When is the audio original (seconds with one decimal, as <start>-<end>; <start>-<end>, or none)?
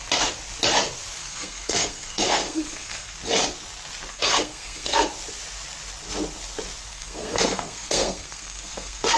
0.0-1.2; 3.1-4.1; 5.1-6.9